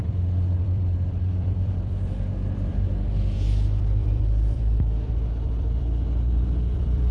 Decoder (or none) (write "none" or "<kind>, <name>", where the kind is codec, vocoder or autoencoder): vocoder, BigVGAN v2